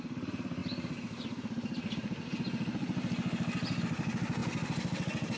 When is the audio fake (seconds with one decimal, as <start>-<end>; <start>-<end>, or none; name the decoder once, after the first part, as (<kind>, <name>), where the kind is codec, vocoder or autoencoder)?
none